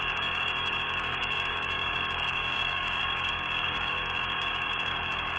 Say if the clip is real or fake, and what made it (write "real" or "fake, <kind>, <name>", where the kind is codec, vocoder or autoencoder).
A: fake, codec, DAC